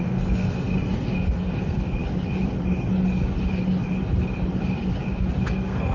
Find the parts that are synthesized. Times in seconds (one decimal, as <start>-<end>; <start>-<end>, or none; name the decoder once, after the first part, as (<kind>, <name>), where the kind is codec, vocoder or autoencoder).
0.0-2.0 (codec, SNAC); 5.5-5.9